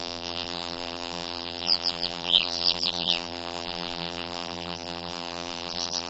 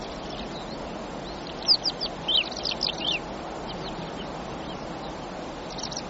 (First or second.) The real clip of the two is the second